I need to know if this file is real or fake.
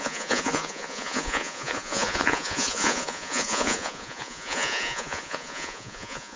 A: fake